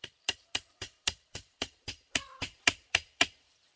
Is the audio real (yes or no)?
no